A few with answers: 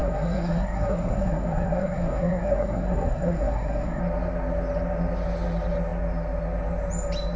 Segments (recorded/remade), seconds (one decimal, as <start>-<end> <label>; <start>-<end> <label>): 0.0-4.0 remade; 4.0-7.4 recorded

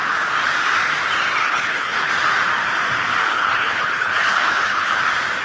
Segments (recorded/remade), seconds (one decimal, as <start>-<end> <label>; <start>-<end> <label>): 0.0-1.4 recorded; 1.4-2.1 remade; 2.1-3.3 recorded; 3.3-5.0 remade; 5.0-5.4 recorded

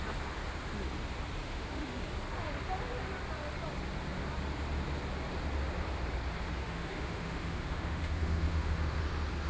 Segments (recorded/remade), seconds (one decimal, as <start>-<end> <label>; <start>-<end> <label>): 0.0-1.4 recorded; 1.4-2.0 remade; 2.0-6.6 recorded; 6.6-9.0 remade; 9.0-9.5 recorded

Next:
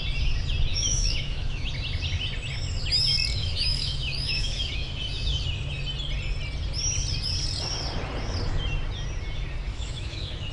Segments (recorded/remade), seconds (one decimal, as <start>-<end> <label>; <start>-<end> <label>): 0.0-0.7 recorded; 0.7-1.7 remade; 1.7-3.4 recorded; 3.4-5.0 remade; 5.0-9.7 recorded; 9.7-10.5 remade

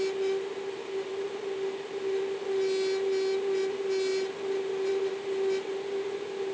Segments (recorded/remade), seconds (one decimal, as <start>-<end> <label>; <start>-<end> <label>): 0.0-6.5 recorded

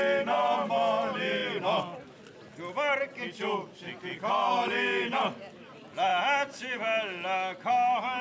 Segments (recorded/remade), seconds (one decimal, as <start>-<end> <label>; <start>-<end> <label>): 0.0-8.2 recorded

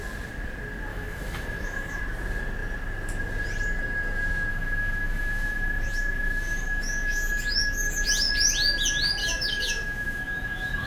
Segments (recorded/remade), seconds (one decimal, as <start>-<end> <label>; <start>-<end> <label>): 0.0-0.9 recorded; 0.9-2.0 remade; 2.0-4.5 recorded; 4.5-8.1 remade; 8.1-9.2 recorded; 9.2-10.9 remade

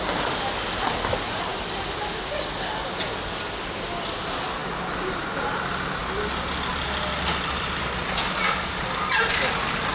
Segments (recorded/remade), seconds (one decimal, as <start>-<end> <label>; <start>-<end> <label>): 0.0-9.9 recorded